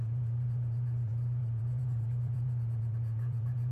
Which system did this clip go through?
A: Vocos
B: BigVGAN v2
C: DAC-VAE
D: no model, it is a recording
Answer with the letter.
A